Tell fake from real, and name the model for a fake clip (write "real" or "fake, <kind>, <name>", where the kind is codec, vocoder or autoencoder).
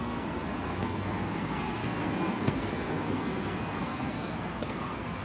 fake, codec, SNAC